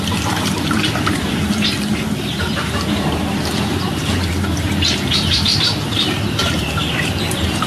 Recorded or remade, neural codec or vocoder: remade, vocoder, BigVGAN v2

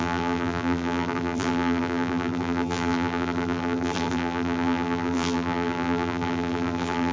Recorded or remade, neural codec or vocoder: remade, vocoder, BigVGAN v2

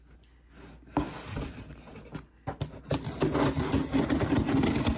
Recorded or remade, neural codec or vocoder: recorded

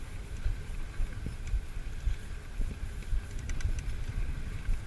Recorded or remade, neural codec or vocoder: remade, vocoder, BigVGAN v2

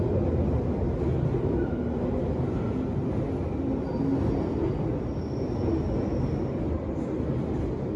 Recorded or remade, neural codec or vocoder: recorded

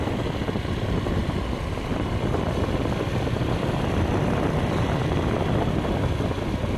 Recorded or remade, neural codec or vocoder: recorded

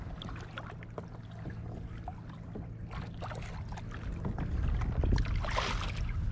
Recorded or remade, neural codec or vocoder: recorded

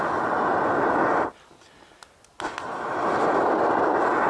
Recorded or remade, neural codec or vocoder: recorded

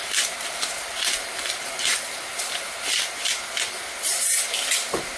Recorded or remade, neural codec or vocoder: recorded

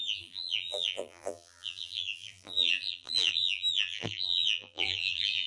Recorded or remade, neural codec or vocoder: remade, vocoder, BigVGAN v2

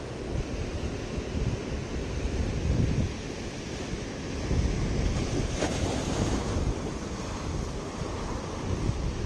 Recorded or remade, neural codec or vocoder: recorded